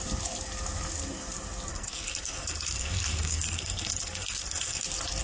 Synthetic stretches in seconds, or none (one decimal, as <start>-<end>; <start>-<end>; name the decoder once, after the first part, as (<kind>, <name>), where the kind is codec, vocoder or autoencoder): 1.7-4.8 (codec, SNAC)